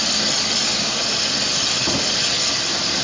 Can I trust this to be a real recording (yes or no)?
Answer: yes